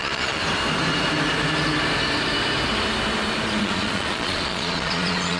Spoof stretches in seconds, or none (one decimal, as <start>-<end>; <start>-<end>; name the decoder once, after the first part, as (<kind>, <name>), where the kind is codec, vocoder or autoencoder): 0.0-0.4 (vocoder, Vocos); 3.6-5.4